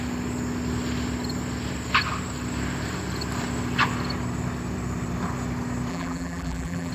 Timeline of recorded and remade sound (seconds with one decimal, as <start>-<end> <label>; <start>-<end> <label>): 0.0-5.9 recorded; 5.9-6.9 remade